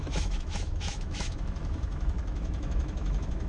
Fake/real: fake